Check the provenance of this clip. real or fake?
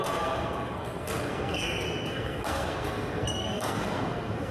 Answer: fake